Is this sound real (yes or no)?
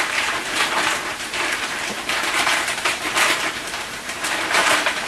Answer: no